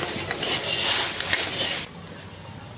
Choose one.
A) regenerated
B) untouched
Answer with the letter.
B